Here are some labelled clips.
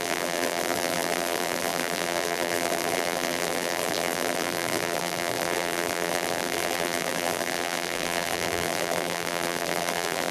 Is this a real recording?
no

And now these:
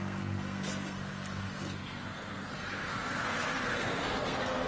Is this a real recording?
no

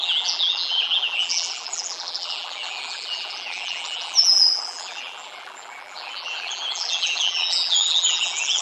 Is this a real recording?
no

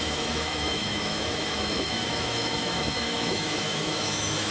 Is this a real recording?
no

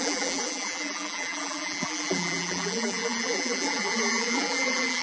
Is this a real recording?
no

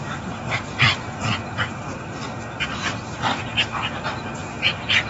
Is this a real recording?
yes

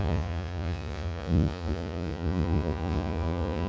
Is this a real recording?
no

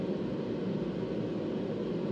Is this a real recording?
yes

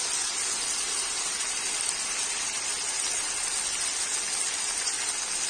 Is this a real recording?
yes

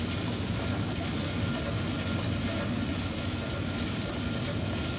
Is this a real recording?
yes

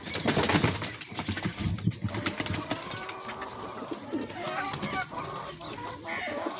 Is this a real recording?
yes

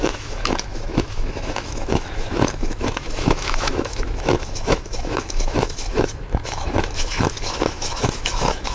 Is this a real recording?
no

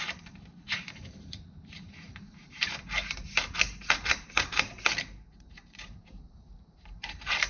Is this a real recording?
no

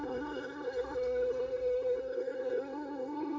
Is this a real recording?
no